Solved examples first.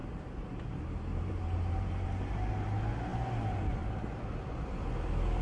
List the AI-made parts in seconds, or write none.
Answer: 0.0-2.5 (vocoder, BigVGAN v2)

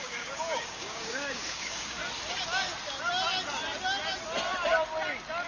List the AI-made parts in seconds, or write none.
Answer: 0.0-2.0 (codec, DAC)

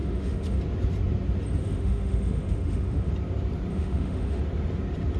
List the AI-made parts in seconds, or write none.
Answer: 0.0-0.6 (autoencoder, DAC-VAE); 1.6-3.1; 3.7-4.4

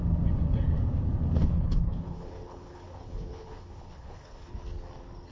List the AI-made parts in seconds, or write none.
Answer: 1.3-4.5 (codec, HILCodec)

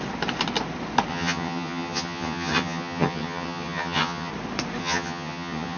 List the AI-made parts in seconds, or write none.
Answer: 1.1-4.3 (vocoder, HiFi-GAN); 4.8-5.8